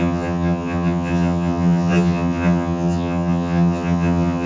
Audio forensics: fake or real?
fake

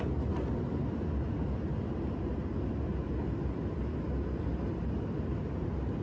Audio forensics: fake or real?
real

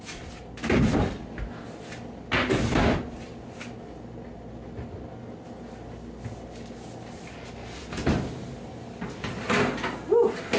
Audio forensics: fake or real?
real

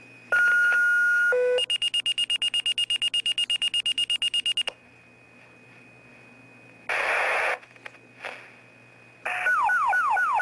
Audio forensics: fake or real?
real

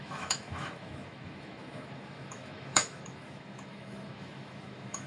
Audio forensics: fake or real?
fake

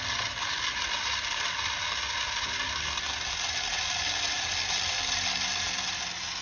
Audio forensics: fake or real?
real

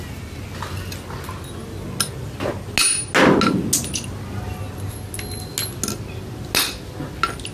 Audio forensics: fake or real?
real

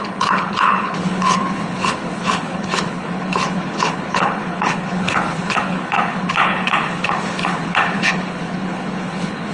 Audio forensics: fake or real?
fake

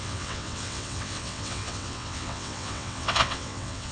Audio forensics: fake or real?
fake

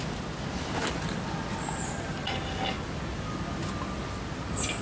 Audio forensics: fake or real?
real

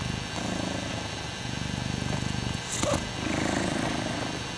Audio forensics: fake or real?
real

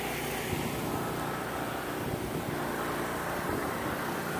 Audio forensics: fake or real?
real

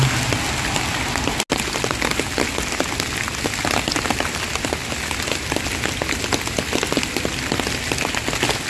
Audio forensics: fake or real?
real